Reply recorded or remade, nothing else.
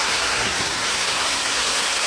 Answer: remade